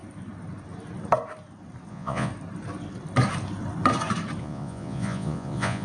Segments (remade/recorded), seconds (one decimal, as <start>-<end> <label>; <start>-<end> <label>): 0.0-1.9 recorded; 1.9-2.3 remade; 2.3-4.4 recorded; 4.4-5.8 remade

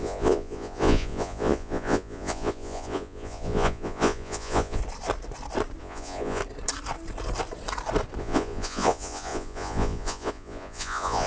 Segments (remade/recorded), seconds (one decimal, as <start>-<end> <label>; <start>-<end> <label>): 0.0-4.8 remade; 4.8-5.8 recorded; 5.8-6.4 remade; 6.4-8.2 recorded; 8.2-11.3 remade

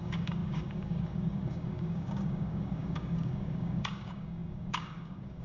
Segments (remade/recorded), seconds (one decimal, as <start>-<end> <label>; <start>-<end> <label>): 0.0-5.4 remade

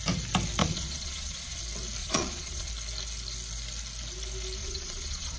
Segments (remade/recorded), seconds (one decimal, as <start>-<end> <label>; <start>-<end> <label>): 0.0-0.6 recorded; 0.6-1.6 remade; 1.6-2.0 recorded; 2.0-2.7 remade; 2.7-4.6 recorded; 4.6-5.4 remade

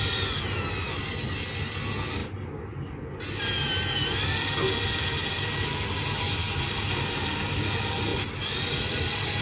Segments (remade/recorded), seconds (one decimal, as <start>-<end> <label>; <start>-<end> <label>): 0.0-9.4 recorded

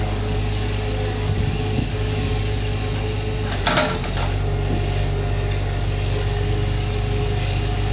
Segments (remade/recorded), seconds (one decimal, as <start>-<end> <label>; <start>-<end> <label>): 0.0-2.7 remade; 2.7-5.0 recorded; 5.0-7.9 remade

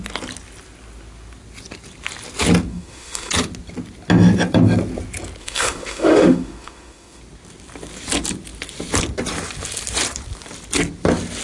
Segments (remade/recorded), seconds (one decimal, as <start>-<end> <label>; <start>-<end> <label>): 0.0-2.7 recorded; 2.7-3.3 remade; 3.3-5.4 recorded; 5.4-7.2 remade; 7.2-11.4 recorded